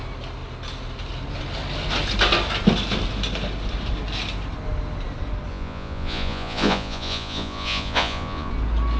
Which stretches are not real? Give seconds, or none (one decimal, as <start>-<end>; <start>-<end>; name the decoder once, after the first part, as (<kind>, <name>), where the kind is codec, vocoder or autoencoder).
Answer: 5.5-8.5 (vocoder, Vocos)

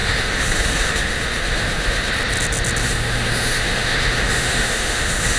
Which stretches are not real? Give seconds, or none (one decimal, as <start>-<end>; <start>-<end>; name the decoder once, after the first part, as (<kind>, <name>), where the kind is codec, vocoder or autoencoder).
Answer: 0.0-2.1 (autoencoder, DAC-VAE); 2.8-5.4